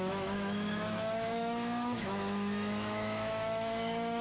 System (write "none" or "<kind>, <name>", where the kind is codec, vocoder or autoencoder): autoencoder, DAC-VAE